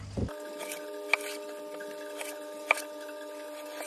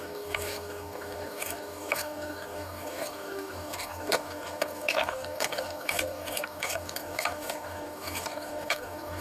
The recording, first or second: first